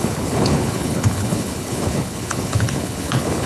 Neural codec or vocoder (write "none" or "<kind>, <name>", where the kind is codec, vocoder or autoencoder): codec, HILCodec